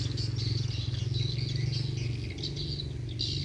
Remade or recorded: recorded